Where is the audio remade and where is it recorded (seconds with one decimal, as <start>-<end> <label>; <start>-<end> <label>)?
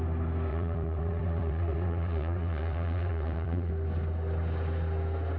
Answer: 0.0-0.5 recorded; 0.5-3.7 remade; 3.7-5.4 recorded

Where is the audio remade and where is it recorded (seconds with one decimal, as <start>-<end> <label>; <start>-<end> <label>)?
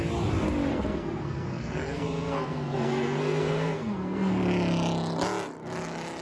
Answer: 0.0-0.7 recorded; 0.7-4.4 remade; 4.4-6.2 recorded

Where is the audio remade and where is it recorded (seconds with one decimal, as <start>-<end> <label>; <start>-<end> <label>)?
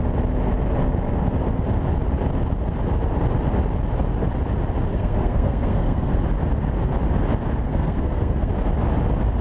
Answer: 0.0-4.9 recorded; 4.9-6.2 remade; 6.2-7.7 recorded; 7.7-8.5 remade; 8.5-9.4 recorded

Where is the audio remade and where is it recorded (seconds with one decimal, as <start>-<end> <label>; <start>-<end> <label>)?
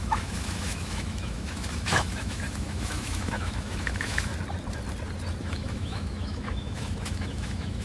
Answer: 0.0-4.3 remade; 4.3-5.4 recorded; 5.4-7.8 remade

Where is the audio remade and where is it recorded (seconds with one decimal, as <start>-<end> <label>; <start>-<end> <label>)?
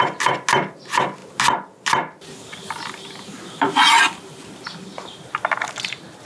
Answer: 0.0-6.3 recorded